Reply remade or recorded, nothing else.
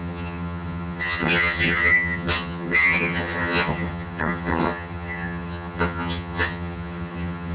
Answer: remade